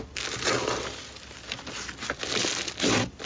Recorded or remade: recorded